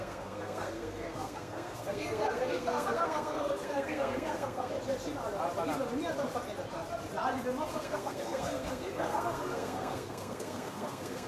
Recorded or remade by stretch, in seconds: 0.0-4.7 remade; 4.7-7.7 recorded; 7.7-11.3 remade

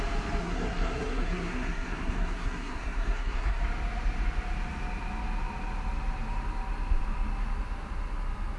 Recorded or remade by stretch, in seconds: 0.0-0.4 recorded; 0.4-3.6 remade; 3.6-8.6 recorded

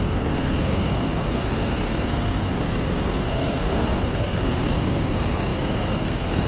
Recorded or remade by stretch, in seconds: 0.0-6.5 remade